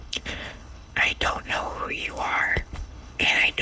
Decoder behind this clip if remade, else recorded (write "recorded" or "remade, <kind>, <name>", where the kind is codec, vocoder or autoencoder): remade, codec, HILCodec